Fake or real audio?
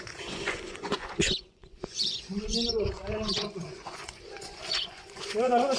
fake